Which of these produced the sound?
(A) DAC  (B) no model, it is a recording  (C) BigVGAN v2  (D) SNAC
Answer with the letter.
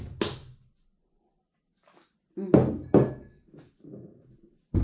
B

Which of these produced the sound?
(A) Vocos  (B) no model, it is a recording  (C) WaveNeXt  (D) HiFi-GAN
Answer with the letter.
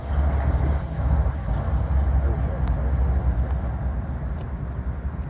B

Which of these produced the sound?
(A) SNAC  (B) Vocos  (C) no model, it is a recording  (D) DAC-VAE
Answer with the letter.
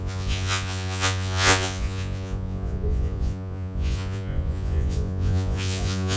B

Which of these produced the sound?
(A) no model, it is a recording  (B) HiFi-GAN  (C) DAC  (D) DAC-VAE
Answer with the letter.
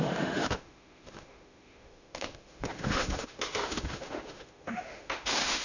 D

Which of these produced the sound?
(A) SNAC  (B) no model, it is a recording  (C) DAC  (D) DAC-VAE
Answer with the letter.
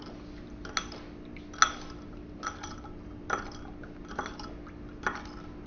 B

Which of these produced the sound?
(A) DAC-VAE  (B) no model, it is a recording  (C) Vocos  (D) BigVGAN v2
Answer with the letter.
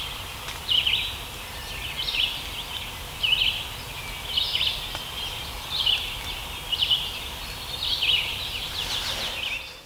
B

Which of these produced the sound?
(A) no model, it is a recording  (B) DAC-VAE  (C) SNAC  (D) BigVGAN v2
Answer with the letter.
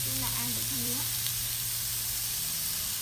D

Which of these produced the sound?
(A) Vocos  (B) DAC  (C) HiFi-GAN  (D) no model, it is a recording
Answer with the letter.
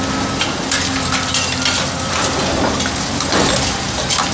D